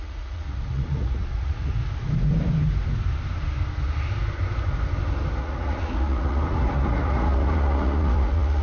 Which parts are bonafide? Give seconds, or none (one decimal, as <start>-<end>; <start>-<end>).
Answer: 1.8-5.4